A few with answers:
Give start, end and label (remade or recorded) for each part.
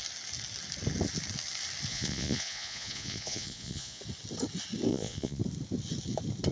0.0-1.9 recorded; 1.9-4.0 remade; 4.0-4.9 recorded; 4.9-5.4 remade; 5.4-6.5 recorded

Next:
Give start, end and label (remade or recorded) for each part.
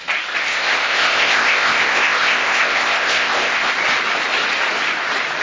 0.0-0.5 recorded; 0.5-3.7 remade; 3.7-5.4 recorded